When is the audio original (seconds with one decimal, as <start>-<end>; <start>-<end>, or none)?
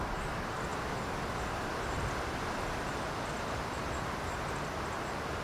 0.0-5.4